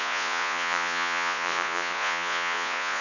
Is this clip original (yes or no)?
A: no